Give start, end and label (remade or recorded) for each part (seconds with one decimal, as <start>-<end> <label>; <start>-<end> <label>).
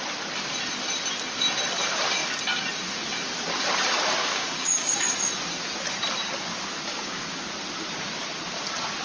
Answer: 0.0-4.2 recorded; 4.2-4.9 remade; 4.9-6.9 recorded; 6.9-7.4 remade; 7.4-9.0 recorded